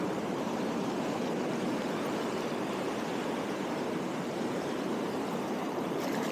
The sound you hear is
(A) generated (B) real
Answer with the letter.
A